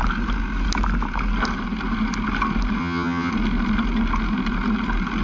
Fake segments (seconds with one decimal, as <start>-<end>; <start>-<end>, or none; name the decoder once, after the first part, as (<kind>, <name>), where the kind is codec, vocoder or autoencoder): 2.8-3.3 (vocoder, HiFi-GAN)